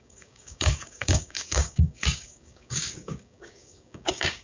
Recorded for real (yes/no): no